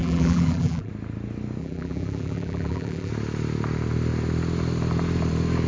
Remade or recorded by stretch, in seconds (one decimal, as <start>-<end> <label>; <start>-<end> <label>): 0.0-0.9 remade; 0.9-1.6 recorded; 1.6-3.1 remade; 3.1-5.7 recorded